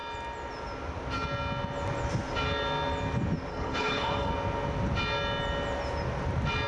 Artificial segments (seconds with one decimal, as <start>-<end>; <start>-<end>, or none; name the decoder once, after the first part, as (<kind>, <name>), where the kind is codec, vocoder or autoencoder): 3.5-4.3 (codec, HILCodec)